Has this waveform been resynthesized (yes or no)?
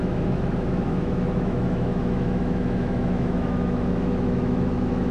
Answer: yes